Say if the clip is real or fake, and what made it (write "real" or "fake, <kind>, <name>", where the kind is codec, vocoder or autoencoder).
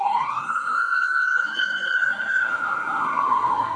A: fake, codec, SNAC